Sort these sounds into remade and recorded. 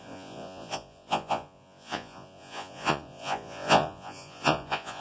remade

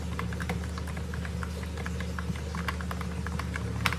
recorded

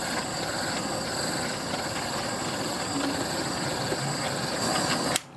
recorded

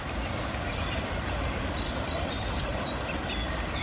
recorded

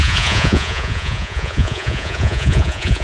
remade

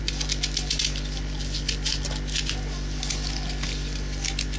recorded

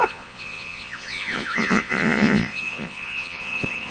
remade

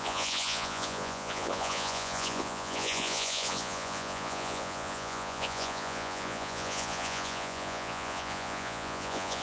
remade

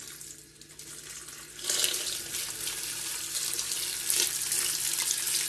recorded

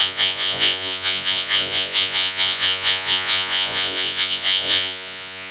remade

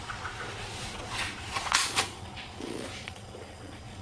remade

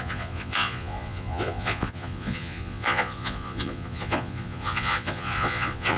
remade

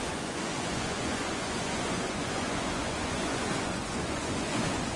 remade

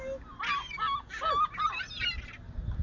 recorded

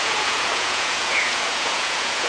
remade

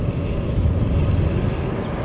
recorded